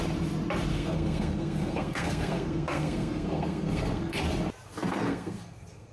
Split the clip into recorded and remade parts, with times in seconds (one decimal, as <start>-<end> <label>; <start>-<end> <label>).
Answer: 0.0-0.7 recorded; 0.7-4.2 remade; 4.2-4.9 recorded; 4.9-5.9 remade